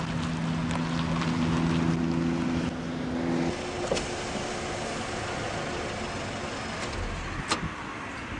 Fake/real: real